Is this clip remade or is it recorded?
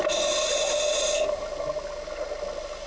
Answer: recorded